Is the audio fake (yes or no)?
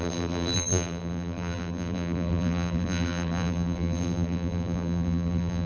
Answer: yes